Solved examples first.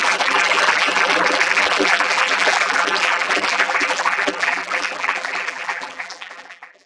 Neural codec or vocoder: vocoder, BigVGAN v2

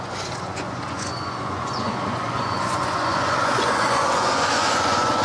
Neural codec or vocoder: vocoder, Vocos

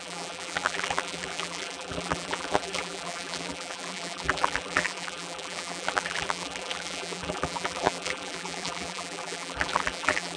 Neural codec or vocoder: vocoder, BigVGAN v2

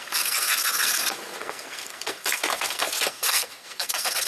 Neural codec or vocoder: codec, SNAC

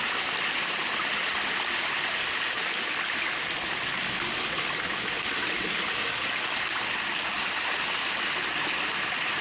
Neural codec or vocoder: none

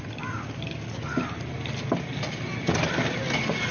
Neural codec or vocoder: none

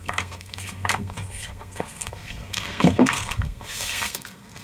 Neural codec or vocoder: codec, SNAC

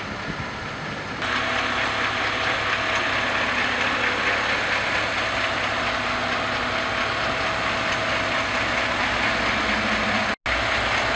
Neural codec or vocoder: none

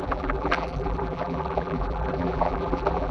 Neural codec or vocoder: vocoder, BigVGAN v2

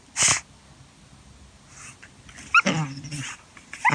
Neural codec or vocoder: none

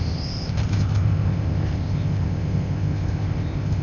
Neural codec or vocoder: codec, ZipCodec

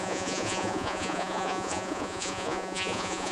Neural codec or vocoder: vocoder, Vocos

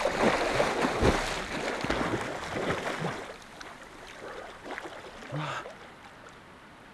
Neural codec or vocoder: none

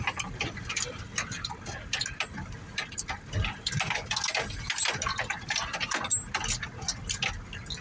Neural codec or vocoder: none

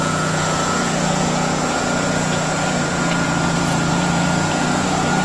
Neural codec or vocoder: vocoder, Vocos